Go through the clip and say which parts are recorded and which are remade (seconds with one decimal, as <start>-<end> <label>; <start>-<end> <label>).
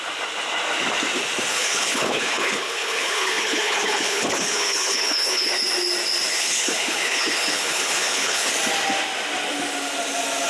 0.0-1.5 recorded; 1.5-5.5 remade; 5.5-6.3 recorded; 6.3-8.5 remade; 8.5-10.5 recorded